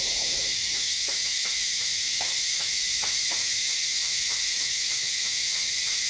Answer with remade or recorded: remade